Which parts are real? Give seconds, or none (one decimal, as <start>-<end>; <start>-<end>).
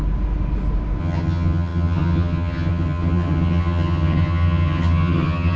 0.0-1.0